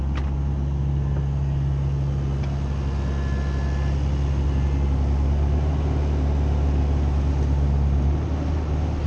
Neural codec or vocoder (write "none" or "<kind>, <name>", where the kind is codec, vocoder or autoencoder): none